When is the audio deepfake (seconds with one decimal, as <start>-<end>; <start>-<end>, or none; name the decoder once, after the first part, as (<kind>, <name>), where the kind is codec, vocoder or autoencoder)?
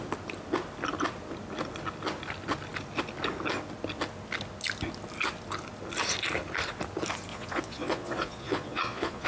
7.3-9.3 (vocoder, Vocos)